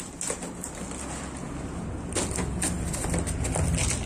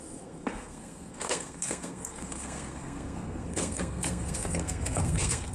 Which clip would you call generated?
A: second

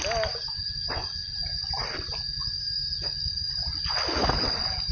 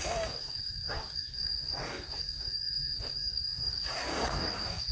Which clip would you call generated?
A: second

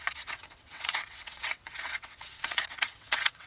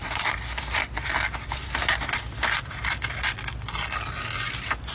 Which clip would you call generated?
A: first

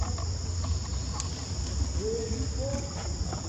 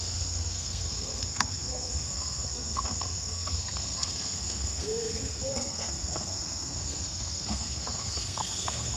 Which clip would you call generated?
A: second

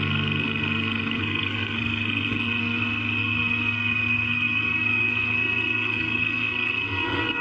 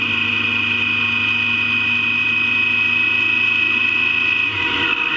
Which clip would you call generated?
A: first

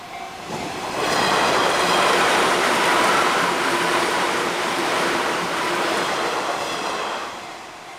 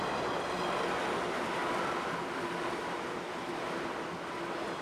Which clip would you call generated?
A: first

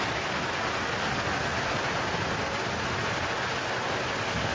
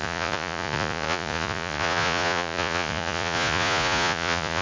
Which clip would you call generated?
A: second